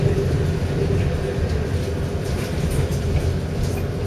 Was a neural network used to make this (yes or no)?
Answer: no